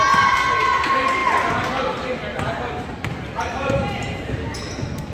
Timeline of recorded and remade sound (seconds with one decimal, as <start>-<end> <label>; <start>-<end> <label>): 0.0-5.1 recorded